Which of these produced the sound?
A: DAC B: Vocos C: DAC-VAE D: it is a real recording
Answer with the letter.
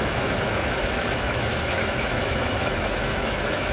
C